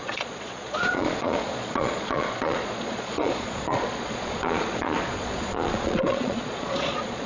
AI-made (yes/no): yes